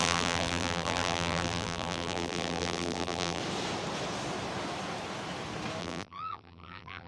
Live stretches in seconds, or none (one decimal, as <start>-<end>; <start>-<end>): 3.4-5.8